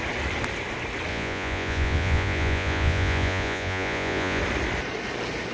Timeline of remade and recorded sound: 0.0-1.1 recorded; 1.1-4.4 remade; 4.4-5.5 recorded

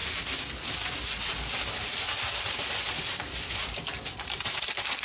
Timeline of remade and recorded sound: 0.0-5.0 recorded

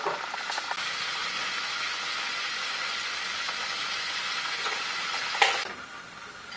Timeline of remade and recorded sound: 0.0-1.2 recorded; 1.2-5.2 remade; 5.2-6.6 recorded

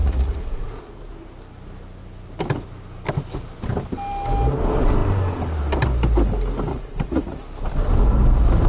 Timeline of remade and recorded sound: 0.0-0.7 remade; 0.7-6.7 recorded; 6.7-7.4 remade; 7.4-8.7 recorded

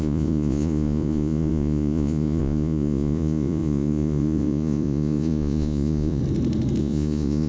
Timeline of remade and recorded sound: 0.0-6.2 remade; 6.2-6.8 recorded; 6.8-7.5 remade

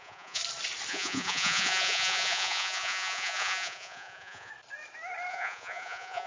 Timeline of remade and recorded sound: 0.0-0.4 remade; 0.4-0.9 recorded; 0.9-4.5 remade; 4.5-5.3 recorded; 5.3-6.3 remade

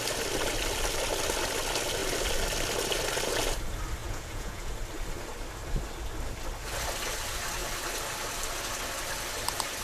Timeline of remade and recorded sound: 0.0-4.0 recorded; 4.0-4.7 remade; 4.7-9.8 recorded